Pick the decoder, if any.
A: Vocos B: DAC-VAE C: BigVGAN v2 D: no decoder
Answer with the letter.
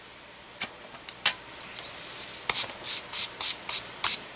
D